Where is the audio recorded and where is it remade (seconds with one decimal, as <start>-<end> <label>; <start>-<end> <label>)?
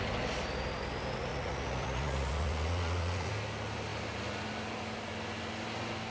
0.0-1.3 recorded; 1.3-3.3 remade; 3.3-6.1 recorded